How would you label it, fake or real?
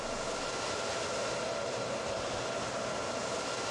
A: real